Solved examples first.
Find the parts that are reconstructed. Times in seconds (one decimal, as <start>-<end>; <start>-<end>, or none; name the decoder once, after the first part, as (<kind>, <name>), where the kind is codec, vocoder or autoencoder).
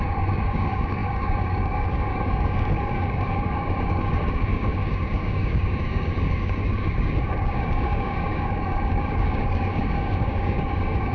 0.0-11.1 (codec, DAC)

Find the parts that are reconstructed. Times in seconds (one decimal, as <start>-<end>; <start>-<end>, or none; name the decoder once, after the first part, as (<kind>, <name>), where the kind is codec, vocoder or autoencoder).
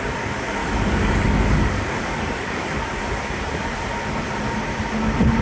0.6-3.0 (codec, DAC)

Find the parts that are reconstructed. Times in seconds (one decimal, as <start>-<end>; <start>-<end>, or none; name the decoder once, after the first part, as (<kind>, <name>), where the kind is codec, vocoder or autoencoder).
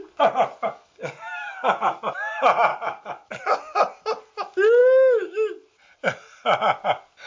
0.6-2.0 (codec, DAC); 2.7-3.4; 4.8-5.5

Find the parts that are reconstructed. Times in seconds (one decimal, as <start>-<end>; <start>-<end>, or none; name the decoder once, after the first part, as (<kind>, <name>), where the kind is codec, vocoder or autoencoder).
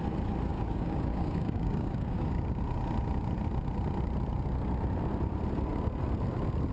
0.5-2.6 (codec, DAC)